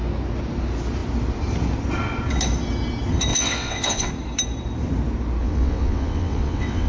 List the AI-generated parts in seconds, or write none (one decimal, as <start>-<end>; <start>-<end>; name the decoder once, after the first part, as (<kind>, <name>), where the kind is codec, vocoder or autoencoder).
3.3-4.1 (vocoder, WaveNeXt); 5.4-6.9